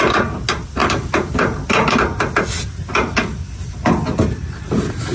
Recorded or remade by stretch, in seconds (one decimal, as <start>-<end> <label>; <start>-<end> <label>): 0.0-5.1 recorded